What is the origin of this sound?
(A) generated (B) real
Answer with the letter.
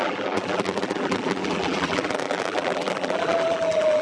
A